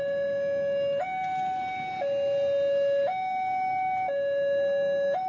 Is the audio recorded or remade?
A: recorded